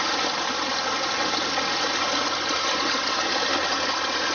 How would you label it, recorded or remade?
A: remade